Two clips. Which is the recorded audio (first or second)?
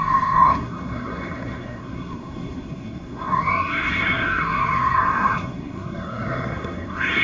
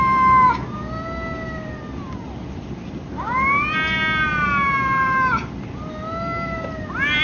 second